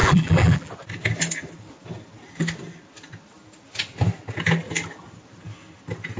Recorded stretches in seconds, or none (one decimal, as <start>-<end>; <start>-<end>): 0.7-6.2